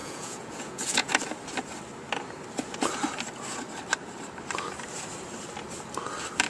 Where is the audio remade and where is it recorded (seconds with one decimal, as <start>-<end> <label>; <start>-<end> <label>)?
0.0-1.1 remade; 1.1-6.5 recorded